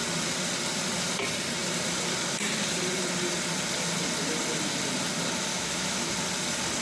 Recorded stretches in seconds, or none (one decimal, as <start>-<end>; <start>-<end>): 0.0-5.5; 6.1-6.8